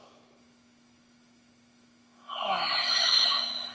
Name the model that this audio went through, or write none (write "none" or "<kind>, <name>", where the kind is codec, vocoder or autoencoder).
autoencoder, DAC-VAE